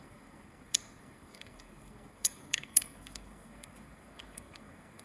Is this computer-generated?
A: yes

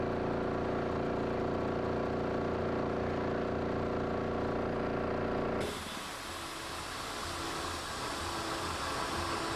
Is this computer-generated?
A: no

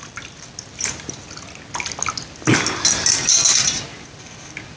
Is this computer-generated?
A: no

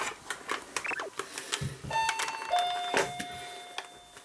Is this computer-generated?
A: no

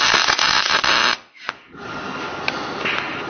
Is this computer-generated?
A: no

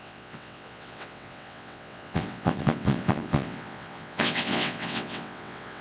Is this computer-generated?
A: yes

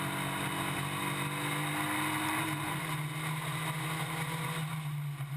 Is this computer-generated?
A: no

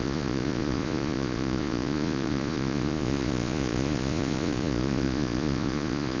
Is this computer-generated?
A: yes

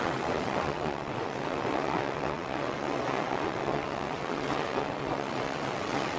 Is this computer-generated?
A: yes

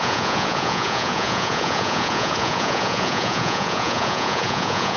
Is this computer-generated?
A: yes